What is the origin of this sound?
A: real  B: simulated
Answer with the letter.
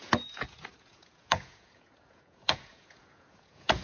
B